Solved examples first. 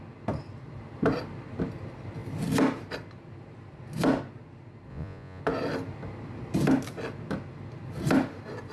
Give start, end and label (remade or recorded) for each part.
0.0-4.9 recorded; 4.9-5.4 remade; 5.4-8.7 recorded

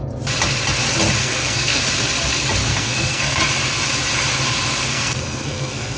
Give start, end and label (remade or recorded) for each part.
0.0-1.2 recorded; 1.2-1.8 remade; 1.8-2.6 recorded; 2.6-3.4 remade; 3.4-4.9 recorded; 4.9-6.0 remade

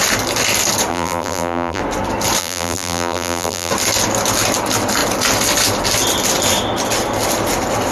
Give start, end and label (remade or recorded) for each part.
0.0-0.9 recorded; 0.9-1.8 remade; 1.8-2.4 recorded; 2.4-3.7 remade; 3.7-7.9 recorded

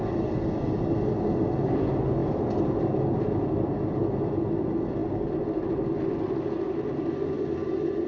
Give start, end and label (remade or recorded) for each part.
0.0-8.1 recorded